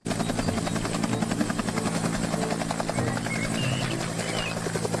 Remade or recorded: recorded